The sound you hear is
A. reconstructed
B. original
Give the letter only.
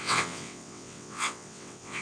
A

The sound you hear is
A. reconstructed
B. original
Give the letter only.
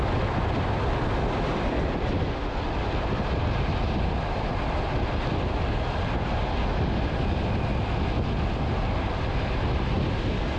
B